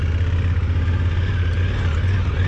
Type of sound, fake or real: real